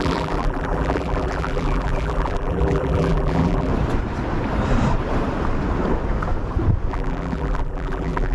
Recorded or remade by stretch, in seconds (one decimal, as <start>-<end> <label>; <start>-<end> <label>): 0.0-3.7 remade; 3.7-6.9 recorded; 6.9-8.3 remade